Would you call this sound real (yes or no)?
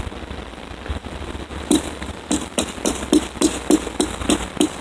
no